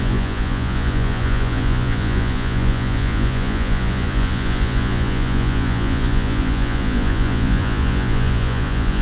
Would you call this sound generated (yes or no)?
yes